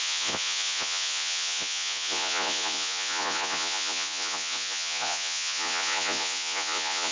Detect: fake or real fake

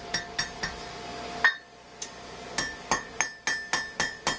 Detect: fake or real real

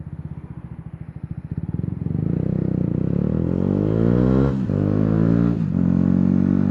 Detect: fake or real real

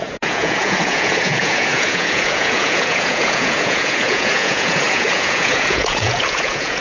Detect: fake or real fake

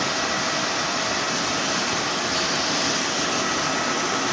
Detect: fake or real real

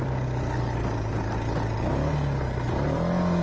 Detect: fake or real real